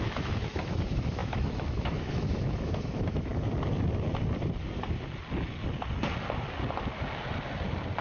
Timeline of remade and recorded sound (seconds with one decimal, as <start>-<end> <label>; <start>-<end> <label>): 0.0-3.3 remade; 3.3-8.0 recorded